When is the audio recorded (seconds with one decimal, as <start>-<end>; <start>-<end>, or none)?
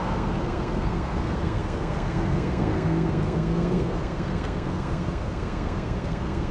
none